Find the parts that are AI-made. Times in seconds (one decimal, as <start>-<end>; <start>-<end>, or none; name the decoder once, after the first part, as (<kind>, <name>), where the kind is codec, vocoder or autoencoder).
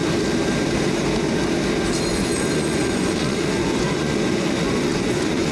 2.1-5.5 (vocoder, Vocos)